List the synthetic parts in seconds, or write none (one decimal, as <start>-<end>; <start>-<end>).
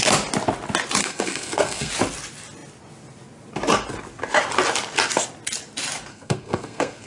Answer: 1.0-1.9; 6.1-7.1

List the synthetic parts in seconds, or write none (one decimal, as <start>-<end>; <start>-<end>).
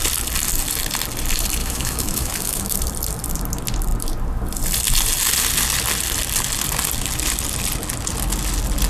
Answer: 1.6-2.8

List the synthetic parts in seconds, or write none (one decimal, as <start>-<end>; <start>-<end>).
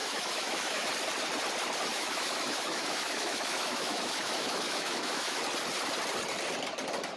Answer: 0.0-0.9; 1.9-5.4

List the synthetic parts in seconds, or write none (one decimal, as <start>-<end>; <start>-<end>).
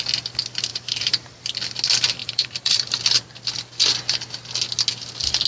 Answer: 0.7-1.4; 2.2-3.0